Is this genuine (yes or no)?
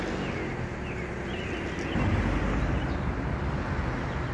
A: yes